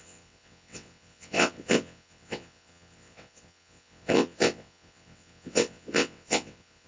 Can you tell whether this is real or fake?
fake